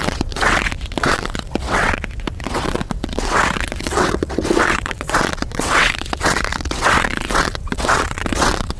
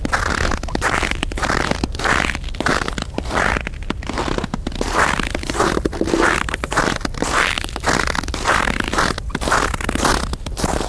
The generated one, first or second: first